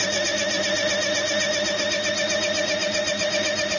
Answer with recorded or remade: recorded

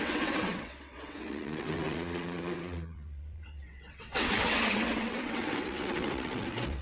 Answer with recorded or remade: remade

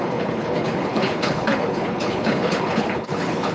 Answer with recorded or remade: remade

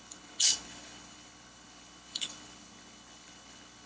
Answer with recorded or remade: remade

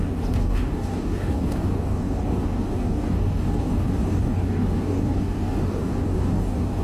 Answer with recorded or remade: remade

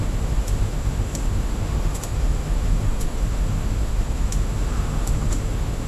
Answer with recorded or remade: remade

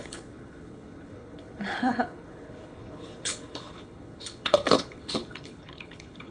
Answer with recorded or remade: remade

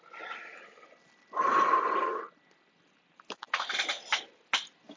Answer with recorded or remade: recorded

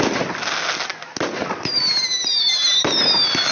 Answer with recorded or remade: recorded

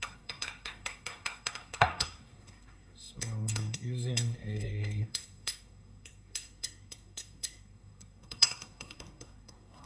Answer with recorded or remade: remade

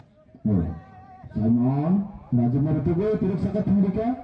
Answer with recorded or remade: recorded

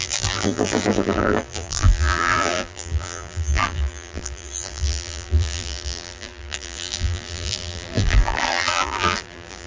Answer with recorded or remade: remade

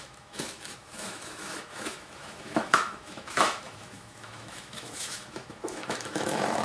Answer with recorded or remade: remade